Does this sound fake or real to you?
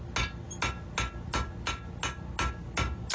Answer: real